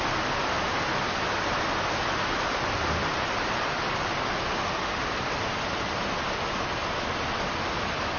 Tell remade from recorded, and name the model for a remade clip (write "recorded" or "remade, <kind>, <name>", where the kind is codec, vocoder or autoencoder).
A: recorded